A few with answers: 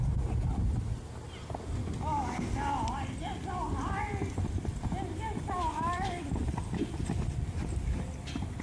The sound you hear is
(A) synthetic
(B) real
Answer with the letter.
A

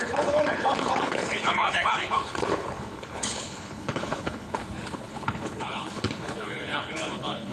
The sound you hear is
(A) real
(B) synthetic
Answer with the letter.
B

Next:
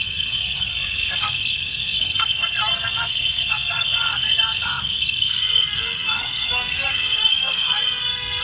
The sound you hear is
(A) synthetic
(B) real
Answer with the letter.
A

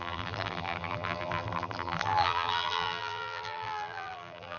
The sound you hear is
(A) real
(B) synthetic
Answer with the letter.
B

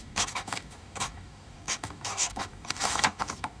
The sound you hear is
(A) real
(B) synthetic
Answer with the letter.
B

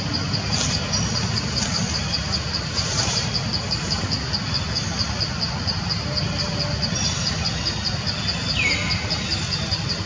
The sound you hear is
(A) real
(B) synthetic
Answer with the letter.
A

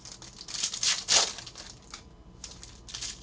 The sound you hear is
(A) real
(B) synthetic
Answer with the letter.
A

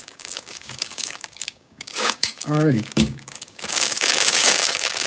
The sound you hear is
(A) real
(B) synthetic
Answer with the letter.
B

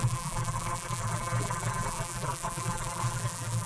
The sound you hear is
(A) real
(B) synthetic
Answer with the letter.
B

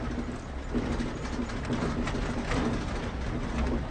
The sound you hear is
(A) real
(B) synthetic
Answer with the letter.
A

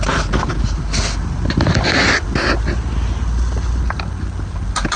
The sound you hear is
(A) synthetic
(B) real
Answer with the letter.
B